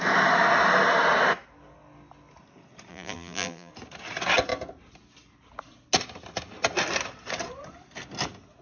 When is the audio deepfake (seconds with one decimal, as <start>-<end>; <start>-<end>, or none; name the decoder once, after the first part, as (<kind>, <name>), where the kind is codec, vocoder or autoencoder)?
2.9-3.7 (vocoder, BigVGAN v2)